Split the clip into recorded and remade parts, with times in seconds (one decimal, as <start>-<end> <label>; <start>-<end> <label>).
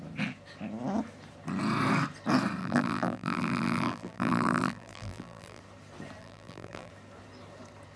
0.0-2.6 recorded; 2.6-5.6 remade; 5.6-6.2 recorded; 6.2-6.9 remade; 6.9-8.0 recorded